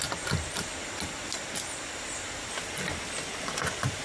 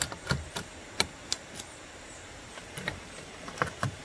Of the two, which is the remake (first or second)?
second